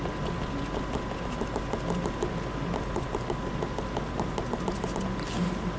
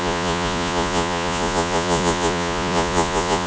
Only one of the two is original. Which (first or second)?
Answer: first